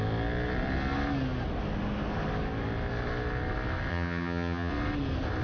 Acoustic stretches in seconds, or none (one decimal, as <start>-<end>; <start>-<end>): 0.0-3.9; 4.7-5.4